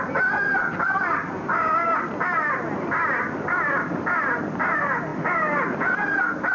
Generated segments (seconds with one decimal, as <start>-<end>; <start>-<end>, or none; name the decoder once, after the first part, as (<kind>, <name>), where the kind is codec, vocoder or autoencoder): none